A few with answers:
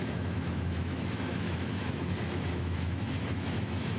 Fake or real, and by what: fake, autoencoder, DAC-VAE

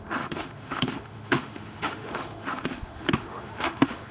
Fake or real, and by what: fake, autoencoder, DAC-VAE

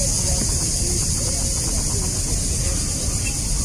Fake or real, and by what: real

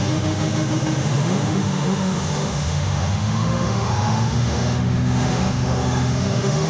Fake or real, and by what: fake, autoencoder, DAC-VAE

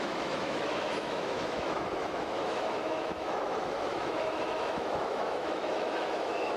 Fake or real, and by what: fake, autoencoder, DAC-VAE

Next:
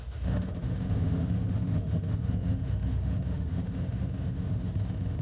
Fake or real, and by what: fake, autoencoder, DAC-VAE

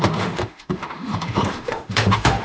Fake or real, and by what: fake, autoencoder, DAC-VAE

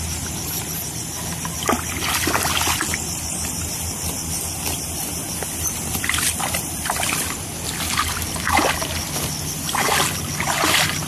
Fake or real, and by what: real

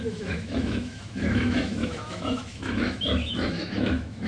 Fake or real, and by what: fake, autoencoder, DAC-VAE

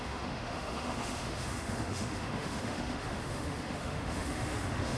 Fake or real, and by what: fake, autoencoder, DAC-VAE